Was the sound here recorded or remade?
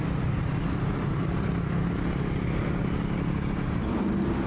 recorded